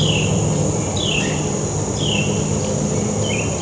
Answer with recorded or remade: recorded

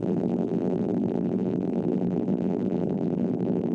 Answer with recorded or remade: remade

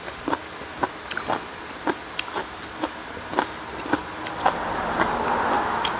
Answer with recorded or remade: recorded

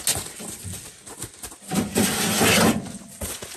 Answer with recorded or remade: recorded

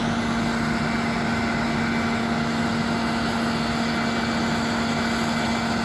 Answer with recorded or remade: recorded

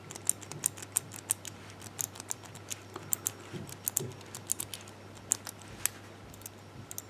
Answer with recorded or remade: recorded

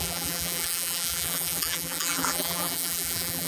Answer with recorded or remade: remade